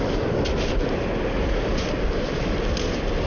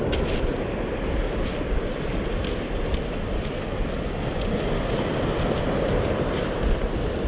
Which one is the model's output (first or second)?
second